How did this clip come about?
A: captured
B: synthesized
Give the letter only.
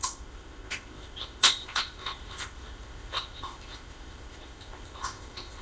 B